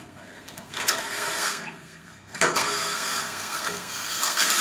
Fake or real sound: fake